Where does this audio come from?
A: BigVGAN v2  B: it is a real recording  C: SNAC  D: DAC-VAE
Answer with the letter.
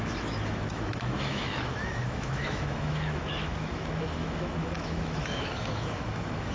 D